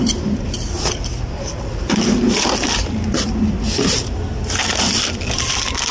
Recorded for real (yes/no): yes